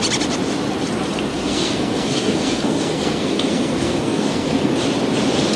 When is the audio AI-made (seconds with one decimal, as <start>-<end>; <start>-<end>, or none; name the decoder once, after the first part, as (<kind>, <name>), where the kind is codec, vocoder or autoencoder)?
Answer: 1.3-4.7 (codec, SNAC)